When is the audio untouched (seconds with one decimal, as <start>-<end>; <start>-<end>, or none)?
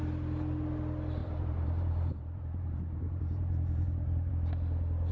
0.0-1.2; 4.3-5.1